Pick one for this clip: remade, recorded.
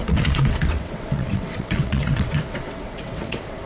remade